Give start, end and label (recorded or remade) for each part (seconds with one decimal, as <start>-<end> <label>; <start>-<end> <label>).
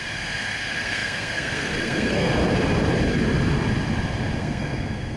0.0-2.4 remade; 2.4-4.4 recorded; 4.4-5.2 remade